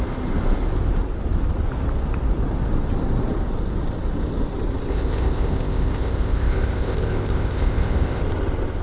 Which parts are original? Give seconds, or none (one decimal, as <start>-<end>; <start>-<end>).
0.0-4.9; 8.2-8.8